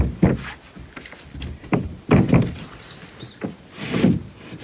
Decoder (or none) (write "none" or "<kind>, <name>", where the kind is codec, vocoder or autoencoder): none